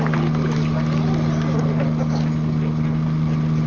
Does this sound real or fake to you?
real